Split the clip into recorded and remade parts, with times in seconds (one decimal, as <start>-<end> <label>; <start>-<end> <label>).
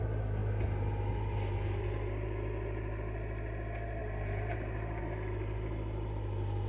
0.0-6.7 recorded